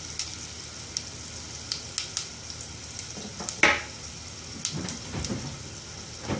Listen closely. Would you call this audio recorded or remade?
recorded